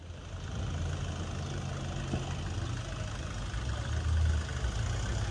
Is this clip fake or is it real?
real